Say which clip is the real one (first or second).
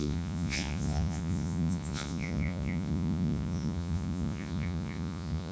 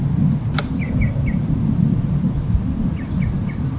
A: second